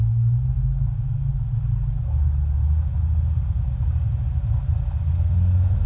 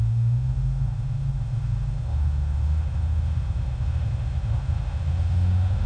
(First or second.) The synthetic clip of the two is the second